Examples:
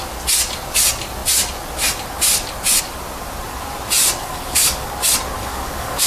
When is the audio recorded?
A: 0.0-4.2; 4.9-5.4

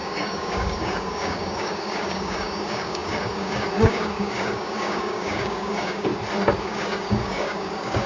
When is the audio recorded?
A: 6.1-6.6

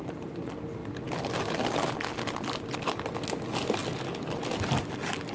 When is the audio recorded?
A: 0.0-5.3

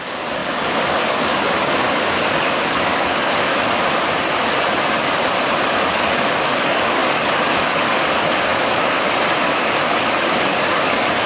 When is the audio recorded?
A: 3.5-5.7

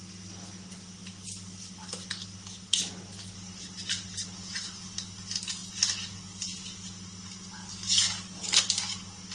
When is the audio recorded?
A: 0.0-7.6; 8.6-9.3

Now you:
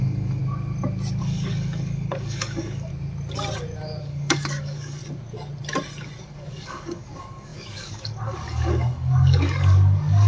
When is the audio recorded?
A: 0.4-1.2; 2.9-4.0; 5.0-6.2